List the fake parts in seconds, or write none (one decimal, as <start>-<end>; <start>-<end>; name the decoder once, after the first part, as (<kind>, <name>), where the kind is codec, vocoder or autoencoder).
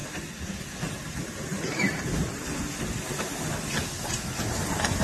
none